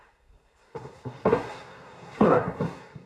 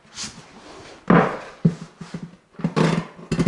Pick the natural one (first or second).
second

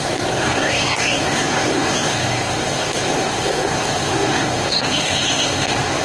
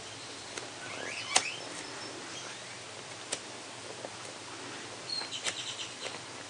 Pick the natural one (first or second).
second